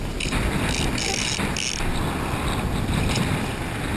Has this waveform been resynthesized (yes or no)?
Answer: no